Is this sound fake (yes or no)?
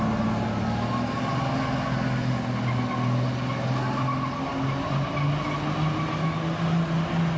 no